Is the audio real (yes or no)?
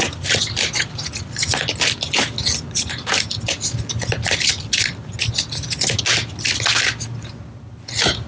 yes